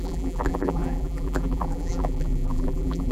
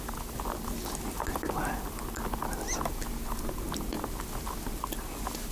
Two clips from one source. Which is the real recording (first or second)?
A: second